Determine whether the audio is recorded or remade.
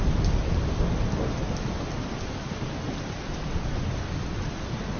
recorded